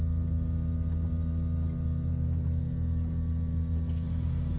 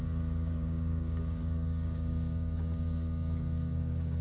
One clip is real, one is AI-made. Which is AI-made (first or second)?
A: second